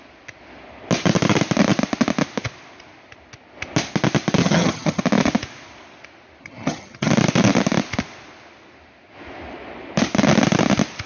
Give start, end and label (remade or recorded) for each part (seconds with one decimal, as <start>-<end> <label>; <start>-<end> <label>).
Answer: 0.0-4.4 recorded; 4.4-5.0 remade; 5.0-6.4 recorded; 6.4-7.1 remade; 7.1-11.1 recorded